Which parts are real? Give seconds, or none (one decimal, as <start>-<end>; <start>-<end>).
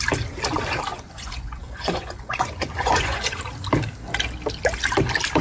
0.0-0.9; 3.4-5.4